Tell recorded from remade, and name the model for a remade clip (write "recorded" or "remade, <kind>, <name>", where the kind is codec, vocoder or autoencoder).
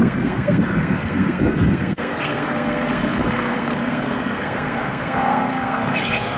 remade, codec, SNAC